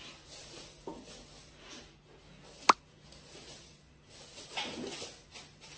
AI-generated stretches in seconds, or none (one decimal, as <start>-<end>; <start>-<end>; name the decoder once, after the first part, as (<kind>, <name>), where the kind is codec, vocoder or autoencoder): none

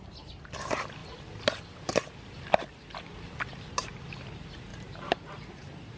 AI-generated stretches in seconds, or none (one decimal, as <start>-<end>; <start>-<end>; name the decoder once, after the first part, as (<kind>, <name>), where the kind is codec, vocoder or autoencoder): 4.7-6.0 (vocoder, BigVGAN v2)

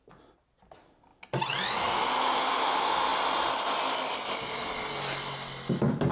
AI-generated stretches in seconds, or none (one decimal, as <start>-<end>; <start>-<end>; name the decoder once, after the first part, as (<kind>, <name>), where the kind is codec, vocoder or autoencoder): none

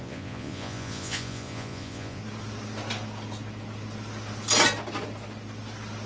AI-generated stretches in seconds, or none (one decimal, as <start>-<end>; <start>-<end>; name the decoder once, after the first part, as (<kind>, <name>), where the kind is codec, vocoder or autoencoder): 0.0-2.2 (vocoder, Vocos)

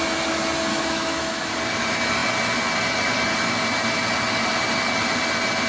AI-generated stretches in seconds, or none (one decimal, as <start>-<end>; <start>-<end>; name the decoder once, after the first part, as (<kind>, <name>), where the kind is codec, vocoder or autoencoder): 0.7-1.5 (autoencoder, DAC-VAE)

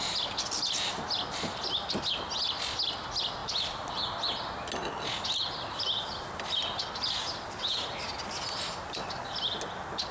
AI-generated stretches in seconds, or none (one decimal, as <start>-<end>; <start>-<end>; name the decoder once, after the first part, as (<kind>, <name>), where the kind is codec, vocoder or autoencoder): none